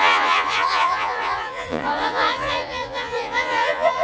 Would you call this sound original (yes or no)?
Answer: no